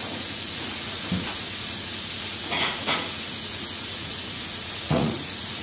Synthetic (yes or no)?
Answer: yes